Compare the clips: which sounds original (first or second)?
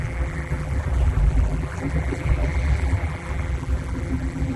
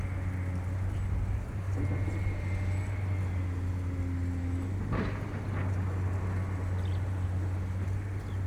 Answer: second